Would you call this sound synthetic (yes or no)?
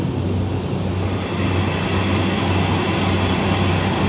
no